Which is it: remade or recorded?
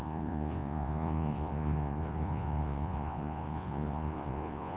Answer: remade